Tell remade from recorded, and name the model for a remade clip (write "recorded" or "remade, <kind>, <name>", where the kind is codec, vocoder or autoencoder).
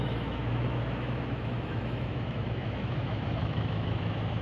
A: remade, autoencoder, DAC-VAE